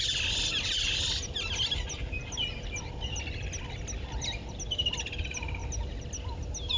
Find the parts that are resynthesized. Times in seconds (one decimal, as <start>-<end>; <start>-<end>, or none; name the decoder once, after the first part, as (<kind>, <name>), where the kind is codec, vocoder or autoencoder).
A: none